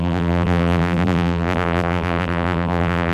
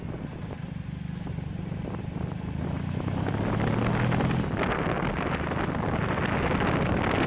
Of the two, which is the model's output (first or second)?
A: first